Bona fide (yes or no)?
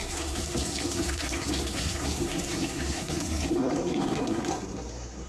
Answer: no